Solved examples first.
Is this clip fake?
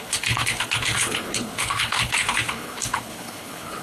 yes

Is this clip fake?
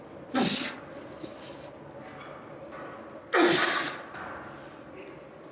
no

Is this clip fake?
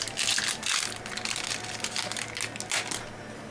no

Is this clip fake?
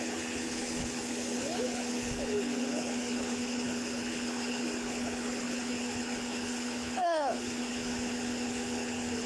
yes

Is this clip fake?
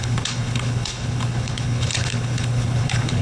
yes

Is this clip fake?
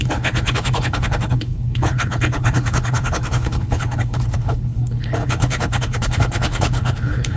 yes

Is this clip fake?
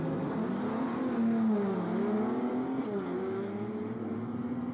no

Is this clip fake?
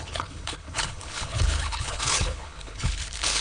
yes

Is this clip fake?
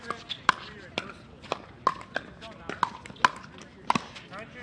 no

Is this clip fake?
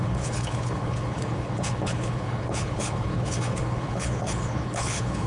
yes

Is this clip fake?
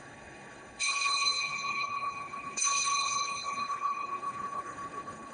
yes